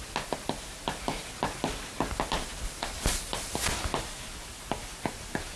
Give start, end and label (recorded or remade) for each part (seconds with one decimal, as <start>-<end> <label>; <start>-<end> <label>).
0.0-5.6 recorded